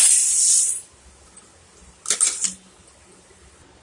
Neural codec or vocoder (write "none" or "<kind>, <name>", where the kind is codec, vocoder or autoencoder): none